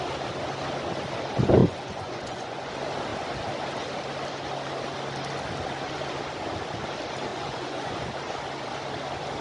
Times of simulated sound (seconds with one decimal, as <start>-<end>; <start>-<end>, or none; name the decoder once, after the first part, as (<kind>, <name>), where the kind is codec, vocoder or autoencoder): 1.6-2.7 (vocoder, Vocos); 7.3-8.1